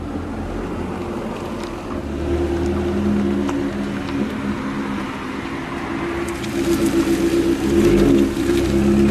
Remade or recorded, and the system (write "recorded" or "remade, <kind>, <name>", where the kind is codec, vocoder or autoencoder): recorded